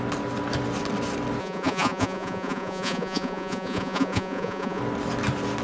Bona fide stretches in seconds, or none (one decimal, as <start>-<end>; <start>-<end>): 0.0-1.4; 4.8-5.6